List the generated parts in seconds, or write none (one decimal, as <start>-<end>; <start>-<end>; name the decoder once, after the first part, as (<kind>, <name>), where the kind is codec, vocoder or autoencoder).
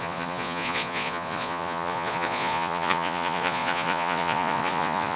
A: 0.0-5.2 (vocoder, Vocos)